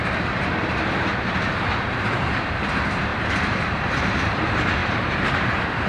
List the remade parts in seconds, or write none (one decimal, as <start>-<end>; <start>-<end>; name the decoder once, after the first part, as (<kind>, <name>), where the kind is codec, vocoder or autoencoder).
0.0-5.9 (vocoder, BigVGAN v2)